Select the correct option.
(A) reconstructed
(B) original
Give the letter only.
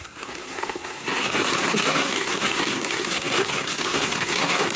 A